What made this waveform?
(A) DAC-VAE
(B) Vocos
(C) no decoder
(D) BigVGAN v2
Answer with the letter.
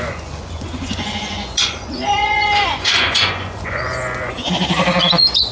B